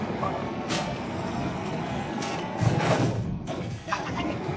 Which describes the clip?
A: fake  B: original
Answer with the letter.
A